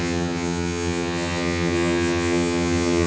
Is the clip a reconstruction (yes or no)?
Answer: yes